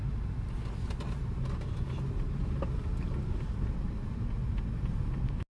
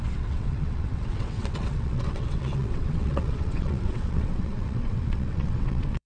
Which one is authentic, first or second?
first